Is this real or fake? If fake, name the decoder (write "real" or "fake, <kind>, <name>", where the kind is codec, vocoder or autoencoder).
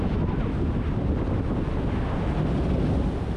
real